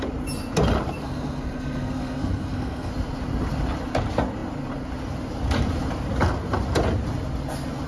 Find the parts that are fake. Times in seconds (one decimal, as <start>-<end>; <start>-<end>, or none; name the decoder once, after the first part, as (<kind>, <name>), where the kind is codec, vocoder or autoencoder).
1.0-2.9 (codec, SNAC)